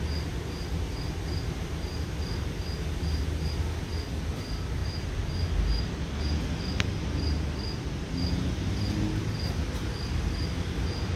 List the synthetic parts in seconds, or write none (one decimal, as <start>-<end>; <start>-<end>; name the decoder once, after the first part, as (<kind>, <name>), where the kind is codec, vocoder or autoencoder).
none